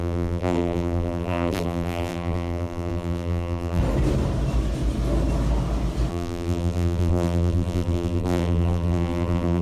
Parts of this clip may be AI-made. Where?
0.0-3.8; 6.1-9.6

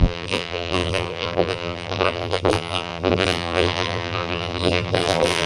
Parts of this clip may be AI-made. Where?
0.0-5.5

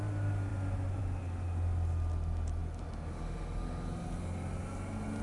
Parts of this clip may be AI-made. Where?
none

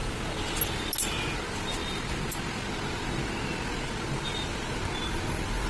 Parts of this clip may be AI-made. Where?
none

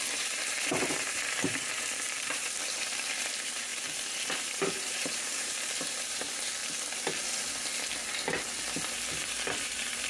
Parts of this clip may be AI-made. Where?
0.0-6.6; 9.6-10.1

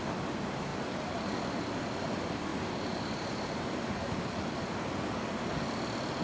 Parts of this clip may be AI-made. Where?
0.7-1.4; 2.5-3.9